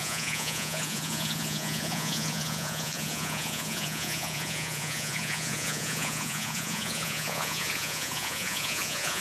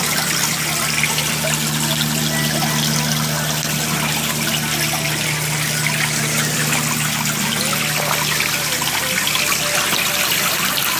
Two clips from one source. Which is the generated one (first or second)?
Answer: first